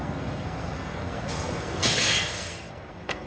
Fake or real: fake